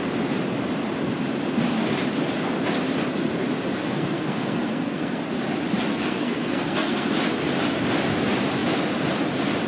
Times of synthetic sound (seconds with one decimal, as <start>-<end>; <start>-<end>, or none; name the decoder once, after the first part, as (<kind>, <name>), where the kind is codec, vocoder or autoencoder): 3.8-5.2 (codec, SNAC); 5.9-7.1